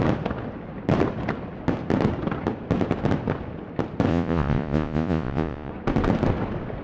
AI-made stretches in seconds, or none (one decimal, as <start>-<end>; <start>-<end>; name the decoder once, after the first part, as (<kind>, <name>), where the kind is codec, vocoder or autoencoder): 4.1-5.7 (vocoder, Vocos)